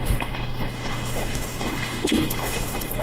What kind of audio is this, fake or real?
fake